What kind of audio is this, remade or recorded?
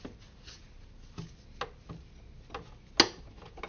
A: recorded